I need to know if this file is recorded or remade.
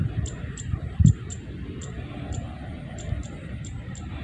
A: remade